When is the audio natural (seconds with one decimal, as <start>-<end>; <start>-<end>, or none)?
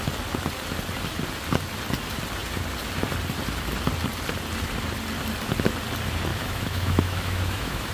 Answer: 0.0-6.3